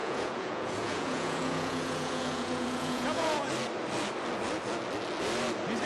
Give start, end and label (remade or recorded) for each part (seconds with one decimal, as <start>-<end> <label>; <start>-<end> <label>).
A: 0.0-3.5 remade; 3.5-5.9 recorded